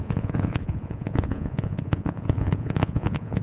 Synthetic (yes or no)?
yes